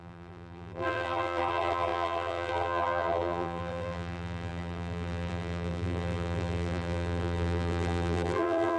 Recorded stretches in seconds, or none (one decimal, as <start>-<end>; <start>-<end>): none